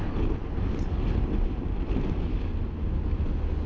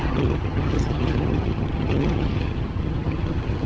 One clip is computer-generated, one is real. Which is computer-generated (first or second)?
second